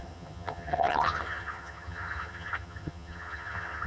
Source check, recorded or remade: remade